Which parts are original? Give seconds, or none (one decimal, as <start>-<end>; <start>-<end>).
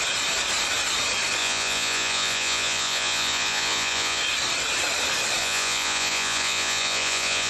0.0-1.4; 4.2-5.4